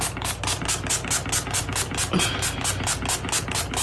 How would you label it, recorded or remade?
recorded